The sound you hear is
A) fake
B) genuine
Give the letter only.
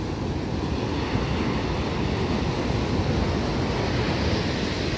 B